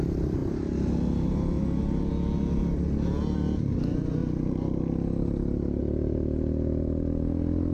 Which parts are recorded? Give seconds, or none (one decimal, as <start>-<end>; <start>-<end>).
0.0-7.7